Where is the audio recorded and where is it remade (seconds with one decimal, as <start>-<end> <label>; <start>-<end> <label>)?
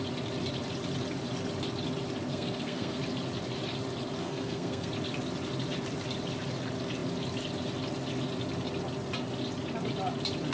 0.0-2.3 recorded; 2.3-3.0 remade; 3.0-4.2 recorded; 4.2-4.9 remade; 4.9-10.5 recorded